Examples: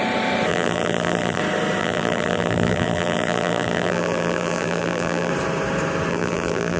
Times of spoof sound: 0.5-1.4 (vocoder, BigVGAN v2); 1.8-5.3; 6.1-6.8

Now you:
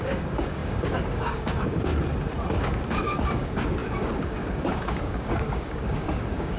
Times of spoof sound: 0.0-1.9 (codec, DAC); 2.5-6.6

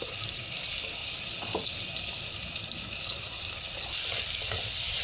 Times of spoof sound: none

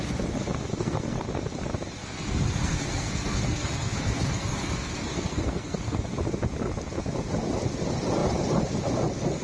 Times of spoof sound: 0.7-1.2 (codec, SNAC); 2.0-6.0

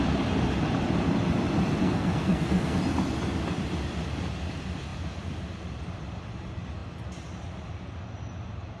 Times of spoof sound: 1.8-2.8 (codec, SNAC)

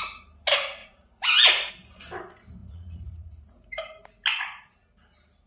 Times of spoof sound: 0.8-1.7 (vocoder, Vocos); 2.6-3.4

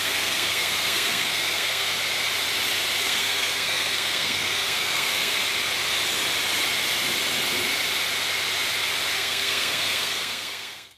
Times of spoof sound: 0.0-1.9 (codec, SNAC); 3.0-5.4; 9.1-11.0